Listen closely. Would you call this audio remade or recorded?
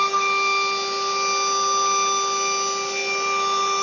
recorded